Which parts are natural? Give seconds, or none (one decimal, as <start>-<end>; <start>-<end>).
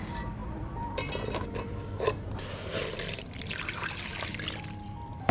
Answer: 4.1-4.6